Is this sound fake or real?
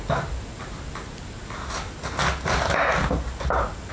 real